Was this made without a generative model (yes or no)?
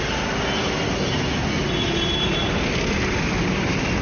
yes